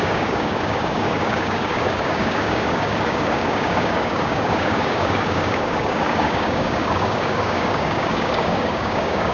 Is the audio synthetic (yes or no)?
yes